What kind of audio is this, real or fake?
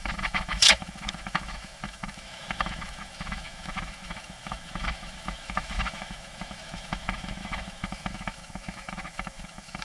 fake